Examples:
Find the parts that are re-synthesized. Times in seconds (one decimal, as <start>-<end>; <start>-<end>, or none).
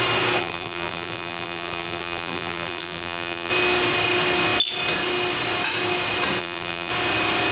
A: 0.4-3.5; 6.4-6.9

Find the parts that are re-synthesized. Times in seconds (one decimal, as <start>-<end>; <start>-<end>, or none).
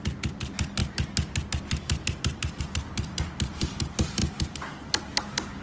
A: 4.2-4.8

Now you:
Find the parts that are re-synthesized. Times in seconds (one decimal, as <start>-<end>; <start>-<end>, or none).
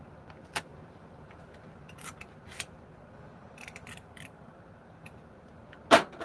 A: 0.7-2.8; 3.4-5.5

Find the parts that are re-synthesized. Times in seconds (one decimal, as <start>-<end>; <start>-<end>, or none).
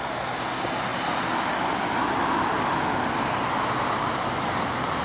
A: none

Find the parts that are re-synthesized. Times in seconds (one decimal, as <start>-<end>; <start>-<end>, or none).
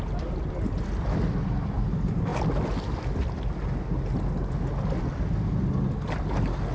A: none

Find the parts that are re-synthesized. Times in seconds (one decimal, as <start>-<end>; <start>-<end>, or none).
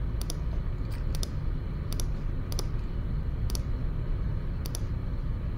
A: none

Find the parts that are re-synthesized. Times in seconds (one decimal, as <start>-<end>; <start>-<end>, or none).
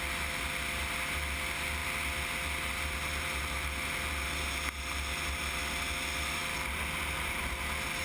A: none